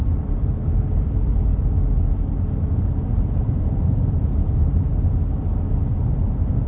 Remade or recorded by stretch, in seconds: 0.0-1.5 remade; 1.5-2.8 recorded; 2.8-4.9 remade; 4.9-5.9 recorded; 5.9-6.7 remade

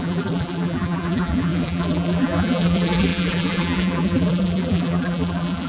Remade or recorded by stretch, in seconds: 0.0-5.7 remade

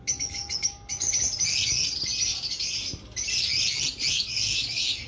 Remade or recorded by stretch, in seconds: 0.0-1.1 remade; 1.1-4.1 recorded; 4.1-5.1 remade

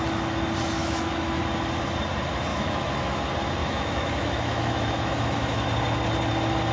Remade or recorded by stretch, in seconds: 0.0-0.8 recorded; 0.8-1.4 remade; 1.4-2.5 recorded; 2.5-3.2 remade; 3.2-3.6 recorded; 3.6-5.7 remade; 5.7-6.7 recorded

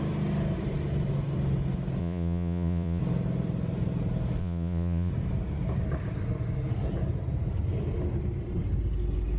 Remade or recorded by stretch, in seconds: 0.0-2.0 recorded; 2.0-3.0 remade; 3.0-4.4 recorded; 4.4-5.1 remade; 5.1-9.4 recorded

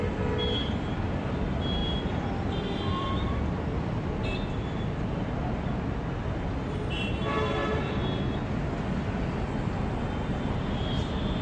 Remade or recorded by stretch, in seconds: 0.0-1.8 recorded; 1.8-5.8 remade; 5.8-11.4 recorded